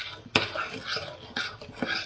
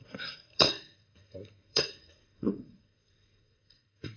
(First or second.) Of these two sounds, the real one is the first